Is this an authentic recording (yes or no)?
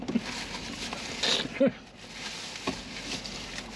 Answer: yes